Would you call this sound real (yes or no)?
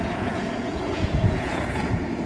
no